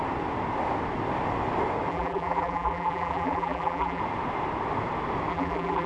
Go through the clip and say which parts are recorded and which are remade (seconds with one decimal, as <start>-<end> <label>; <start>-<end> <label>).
0.0-1.9 recorded; 1.9-4.0 remade; 4.0-5.3 recorded; 5.3-5.9 remade